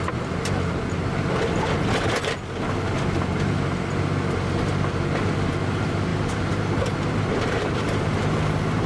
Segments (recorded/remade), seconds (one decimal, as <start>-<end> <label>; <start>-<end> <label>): 0.0-6.1 recorded; 6.1-8.3 remade; 8.3-8.9 recorded

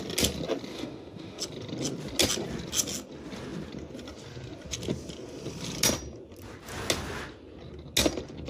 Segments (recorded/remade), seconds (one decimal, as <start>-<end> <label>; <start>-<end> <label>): 0.0-0.7 recorded; 0.7-1.4 remade; 1.4-8.5 recorded

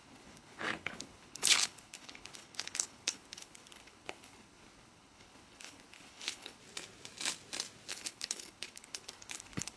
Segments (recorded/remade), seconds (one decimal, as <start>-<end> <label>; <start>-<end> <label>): 0.0-6.6 remade; 6.6-7.9 recorded; 7.9-9.8 remade